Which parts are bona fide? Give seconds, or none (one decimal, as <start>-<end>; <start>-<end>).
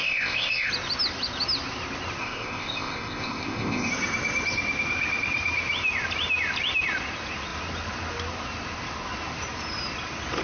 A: 0.7-2.2; 3.9-10.4